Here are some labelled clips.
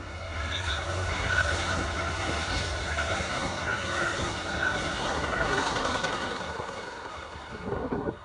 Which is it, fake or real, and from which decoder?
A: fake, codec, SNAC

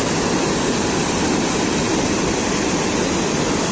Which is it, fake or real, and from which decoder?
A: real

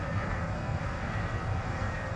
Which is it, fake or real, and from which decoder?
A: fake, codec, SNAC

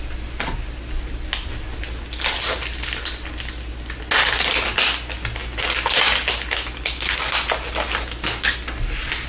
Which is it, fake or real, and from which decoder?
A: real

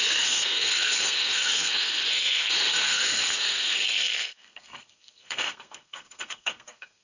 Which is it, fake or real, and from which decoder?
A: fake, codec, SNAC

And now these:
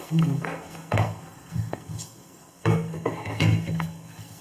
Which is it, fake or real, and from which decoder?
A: fake, codec, SNAC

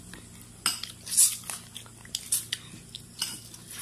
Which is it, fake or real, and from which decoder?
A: real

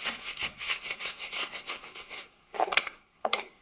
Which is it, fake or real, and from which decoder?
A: fake, codec, SNAC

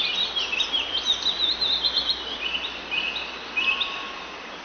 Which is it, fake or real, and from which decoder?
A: real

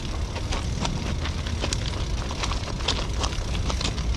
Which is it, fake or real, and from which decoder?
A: real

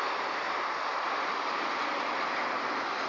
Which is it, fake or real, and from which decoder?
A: real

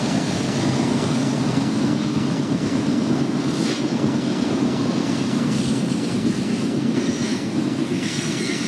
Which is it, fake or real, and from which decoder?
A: fake, codec, SNAC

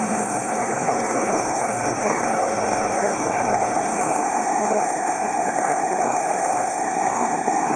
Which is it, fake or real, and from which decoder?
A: fake, codec, SNAC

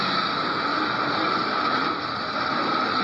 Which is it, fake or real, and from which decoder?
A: real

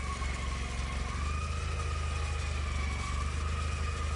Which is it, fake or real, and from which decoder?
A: real